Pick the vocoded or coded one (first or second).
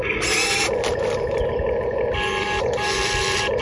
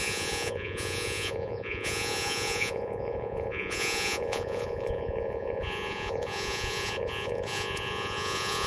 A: second